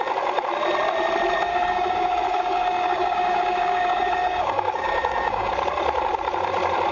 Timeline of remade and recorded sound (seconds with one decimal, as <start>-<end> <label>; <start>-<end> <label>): 0.0-1.5 recorded; 1.5-5.5 remade; 5.5-6.9 recorded